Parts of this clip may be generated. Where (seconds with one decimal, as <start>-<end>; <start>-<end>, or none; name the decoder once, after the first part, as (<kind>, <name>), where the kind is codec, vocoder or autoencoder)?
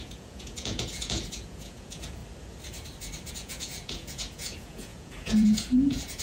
0.0-2.2 (vocoder, Vocos); 3.3-6.2